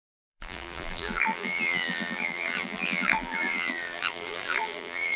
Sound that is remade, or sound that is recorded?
remade